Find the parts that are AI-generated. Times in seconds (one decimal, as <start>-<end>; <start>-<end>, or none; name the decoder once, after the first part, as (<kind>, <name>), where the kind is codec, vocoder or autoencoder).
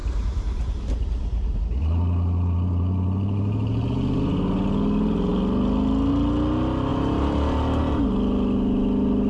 0.0-1.6 (vocoder, BigVGAN v2); 6.9-7.8